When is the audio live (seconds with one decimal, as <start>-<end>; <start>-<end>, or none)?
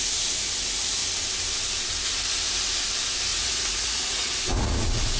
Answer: 0.0-3.3